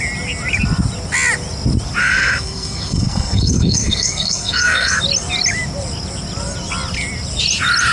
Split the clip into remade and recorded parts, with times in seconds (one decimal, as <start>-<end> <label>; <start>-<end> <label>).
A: 0.0-2.0 recorded; 2.0-5.0 remade; 5.0-7.9 recorded